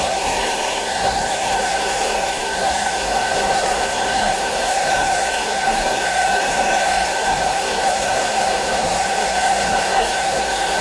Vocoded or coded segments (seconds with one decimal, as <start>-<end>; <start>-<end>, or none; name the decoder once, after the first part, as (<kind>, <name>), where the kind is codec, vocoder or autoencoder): 0.0-10.8 (codec, SNAC)